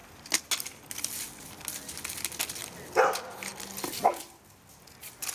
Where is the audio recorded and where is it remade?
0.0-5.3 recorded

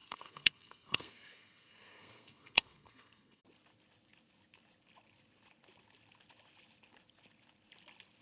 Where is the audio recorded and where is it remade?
0.0-3.4 remade; 3.4-8.2 recorded

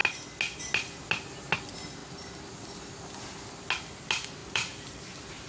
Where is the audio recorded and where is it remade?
0.0-4.4 recorded; 4.4-5.5 remade

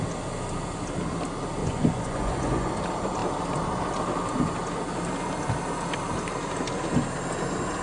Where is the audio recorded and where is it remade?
0.0-1.6 recorded; 1.6-2.7 remade; 2.7-7.8 recorded

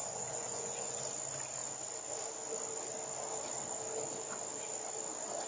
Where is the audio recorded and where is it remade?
0.0-1.0 remade; 1.0-5.5 recorded